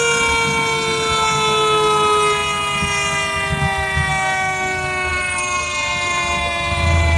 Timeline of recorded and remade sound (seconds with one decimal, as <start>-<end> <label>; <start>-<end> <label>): 0.0-5.1 recorded; 5.1-7.2 remade